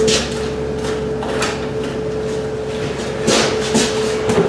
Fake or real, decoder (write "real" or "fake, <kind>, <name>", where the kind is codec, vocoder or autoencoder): real